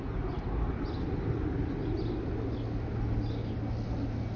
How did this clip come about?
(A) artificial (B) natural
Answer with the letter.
B